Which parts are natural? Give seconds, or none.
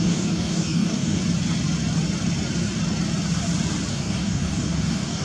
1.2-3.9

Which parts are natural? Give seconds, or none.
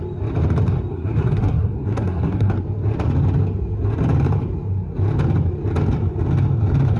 0.0-0.9; 2.5-7.0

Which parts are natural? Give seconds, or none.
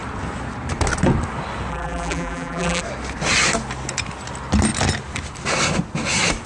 0.0-1.7; 2.8-6.5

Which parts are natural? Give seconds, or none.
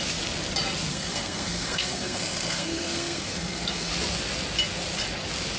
0.0-0.9; 3.9-5.6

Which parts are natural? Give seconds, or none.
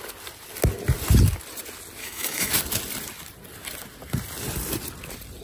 0.0-2.0; 2.5-5.4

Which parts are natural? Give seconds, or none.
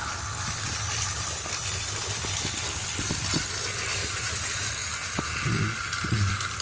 0.0-4.0; 4.7-6.6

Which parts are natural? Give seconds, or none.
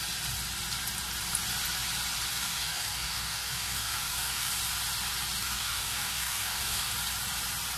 0.0-2.3; 4.5-5.4; 6.9-7.8